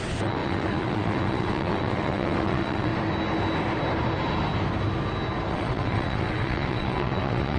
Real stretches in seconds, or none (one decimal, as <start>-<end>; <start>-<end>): 2.9-5.5